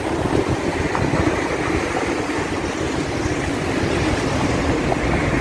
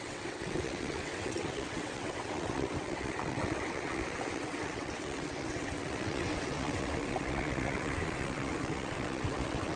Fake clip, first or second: second